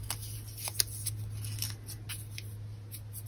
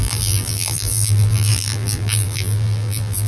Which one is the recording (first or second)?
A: first